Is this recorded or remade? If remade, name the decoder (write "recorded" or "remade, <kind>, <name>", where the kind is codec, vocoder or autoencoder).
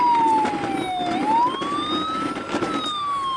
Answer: recorded